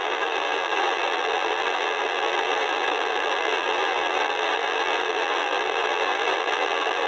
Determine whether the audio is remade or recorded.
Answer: remade